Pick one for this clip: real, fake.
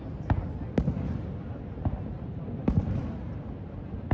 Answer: real